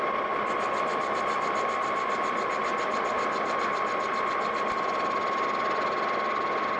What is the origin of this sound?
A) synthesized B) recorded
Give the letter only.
B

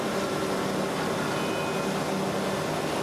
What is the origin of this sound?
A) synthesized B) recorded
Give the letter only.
B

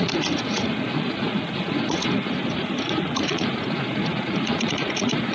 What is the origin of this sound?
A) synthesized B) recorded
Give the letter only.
A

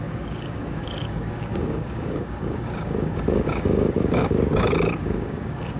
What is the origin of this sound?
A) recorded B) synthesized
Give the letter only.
B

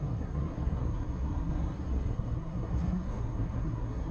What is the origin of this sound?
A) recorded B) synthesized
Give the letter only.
B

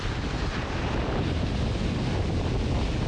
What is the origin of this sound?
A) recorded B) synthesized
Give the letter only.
A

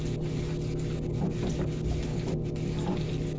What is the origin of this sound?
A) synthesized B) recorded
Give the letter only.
B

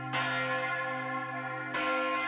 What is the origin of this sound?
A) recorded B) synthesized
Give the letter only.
A